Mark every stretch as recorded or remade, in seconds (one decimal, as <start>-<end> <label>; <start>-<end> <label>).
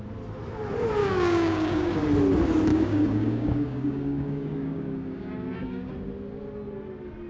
0.0-1.0 recorded; 1.0-1.9 remade; 1.9-2.7 recorded; 2.7-5.9 remade; 5.9-7.3 recorded